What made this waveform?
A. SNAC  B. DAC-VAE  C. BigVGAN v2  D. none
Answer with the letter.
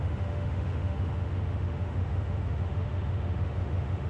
B